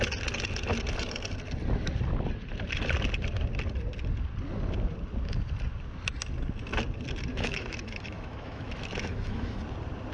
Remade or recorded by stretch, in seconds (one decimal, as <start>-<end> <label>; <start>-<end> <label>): 0.0-7.3 recorded; 7.3-9.6 remade; 9.6-10.1 recorded